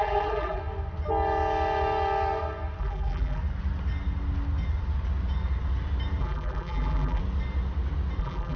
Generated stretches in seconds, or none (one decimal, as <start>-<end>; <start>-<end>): 0.0-0.6; 2.8-3.4; 6.2-7.2; 8.2-8.6